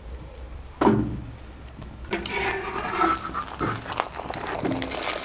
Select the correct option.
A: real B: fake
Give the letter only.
A